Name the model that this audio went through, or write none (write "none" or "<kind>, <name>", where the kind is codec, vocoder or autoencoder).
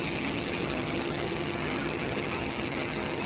vocoder, HiFi-GAN